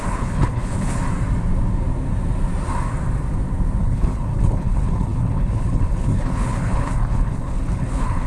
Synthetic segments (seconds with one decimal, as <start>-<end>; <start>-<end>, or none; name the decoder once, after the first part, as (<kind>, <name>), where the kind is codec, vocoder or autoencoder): 0.0-1.0 (codec, HILCodec); 3.8-8.3